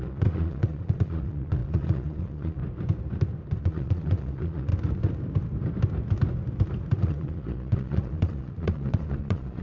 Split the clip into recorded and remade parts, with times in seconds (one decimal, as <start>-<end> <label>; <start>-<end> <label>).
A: 0.0-2.6 remade; 2.6-3.6 recorded; 3.6-4.7 remade; 4.7-7.0 recorded; 7.0-9.6 remade